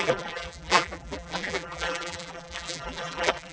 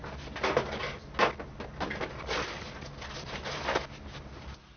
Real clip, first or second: second